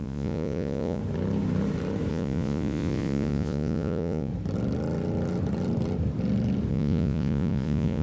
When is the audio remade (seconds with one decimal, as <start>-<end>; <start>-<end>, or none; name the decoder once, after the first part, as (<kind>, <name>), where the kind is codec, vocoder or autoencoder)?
0.0-1.0 (vocoder, Vocos); 2.1-4.3; 6.7-8.0